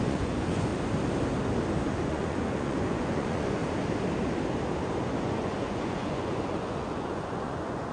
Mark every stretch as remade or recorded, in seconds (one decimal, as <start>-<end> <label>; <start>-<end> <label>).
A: 0.0-0.7 remade; 0.7-1.8 recorded; 1.8-3.6 remade; 3.6-5.2 recorded; 5.2-7.9 remade